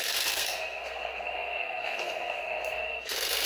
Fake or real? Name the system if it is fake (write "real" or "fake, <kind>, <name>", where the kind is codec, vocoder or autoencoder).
fake, codec, SNAC